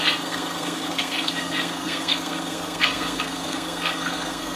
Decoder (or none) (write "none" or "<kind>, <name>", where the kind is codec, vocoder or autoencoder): codec, SNAC